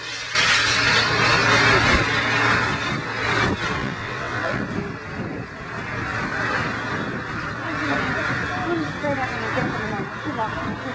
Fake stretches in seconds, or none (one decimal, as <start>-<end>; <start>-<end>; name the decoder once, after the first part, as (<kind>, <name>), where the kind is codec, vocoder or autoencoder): 3.8-4.6 (vocoder, WaveNeXt)